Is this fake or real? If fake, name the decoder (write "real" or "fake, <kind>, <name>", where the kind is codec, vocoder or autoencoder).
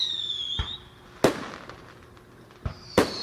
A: real